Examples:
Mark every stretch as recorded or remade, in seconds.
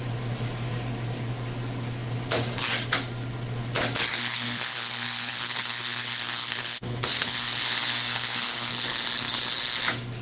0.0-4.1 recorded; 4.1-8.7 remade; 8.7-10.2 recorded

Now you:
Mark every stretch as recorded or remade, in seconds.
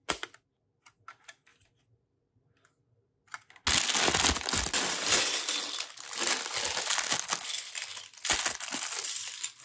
0.0-9.6 recorded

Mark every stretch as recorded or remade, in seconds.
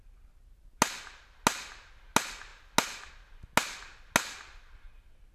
0.0-5.3 recorded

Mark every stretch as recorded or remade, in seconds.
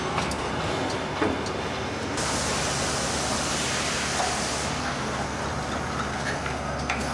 0.0-0.5 remade; 0.5-4.8 recorded; 4.8-5.4 remade; 5.4-6.1 recorded; 6.1-7.1 remade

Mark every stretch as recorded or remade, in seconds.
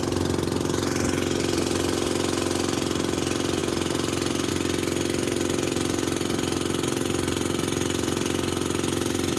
0.0-9.4 recorded